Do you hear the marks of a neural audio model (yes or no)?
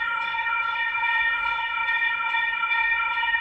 yes